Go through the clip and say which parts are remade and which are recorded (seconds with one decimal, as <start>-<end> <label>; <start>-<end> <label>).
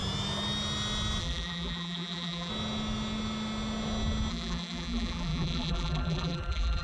0.0-1.2 recorded; 1.2-2.5 remade; 2.5-4.3 recorded; 4.3-6.8 remade